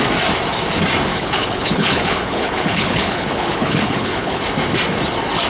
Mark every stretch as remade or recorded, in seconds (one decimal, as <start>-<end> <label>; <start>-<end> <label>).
0.0-1.1 recorded; 1.1-4.4 remade; 4.4-5.5 recorded